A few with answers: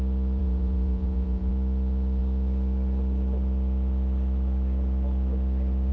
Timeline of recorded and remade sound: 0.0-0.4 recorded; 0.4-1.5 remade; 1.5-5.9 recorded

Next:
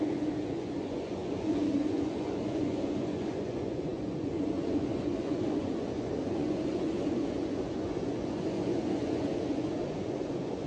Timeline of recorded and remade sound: 0.0-10.7 remade

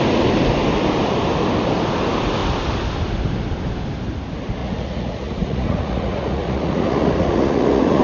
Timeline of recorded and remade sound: 0.0-4.6 recorded; 4.6-8.0 remade

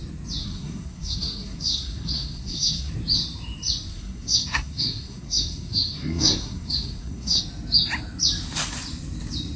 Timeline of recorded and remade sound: 0.0-0.4 recorded; 0.4-2.9 remade; 2.9-3.9 recorded; 3.9-7.4 remade; 7.4-9.6 recorded

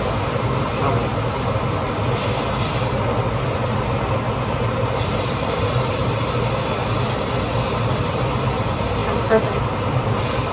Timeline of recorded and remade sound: 0.0-2.7 remade; 2.7-5.2 recorded; 5.2-6.0 remade; 6.0-7.9 recorded; 7.9-10.5 remade